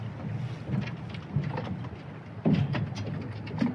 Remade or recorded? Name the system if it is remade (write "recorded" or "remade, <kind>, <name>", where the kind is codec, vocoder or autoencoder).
recorded